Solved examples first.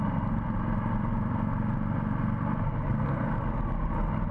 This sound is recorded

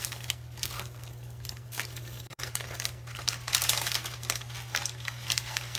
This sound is remade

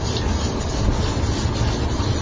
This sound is recorded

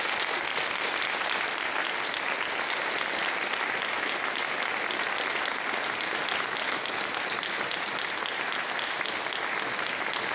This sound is recorded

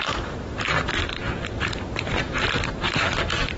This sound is remade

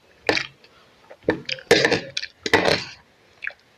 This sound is recorded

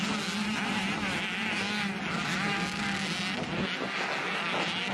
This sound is recorded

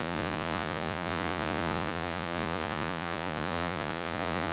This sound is remade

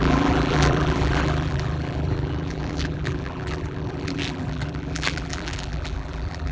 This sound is remade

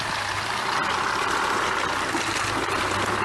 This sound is recorded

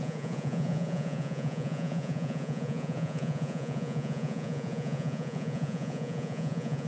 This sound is remade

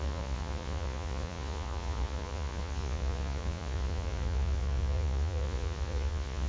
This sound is remade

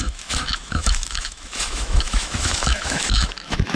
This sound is remade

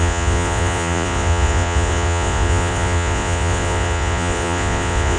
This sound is remade